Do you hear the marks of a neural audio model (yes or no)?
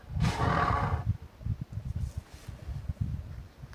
no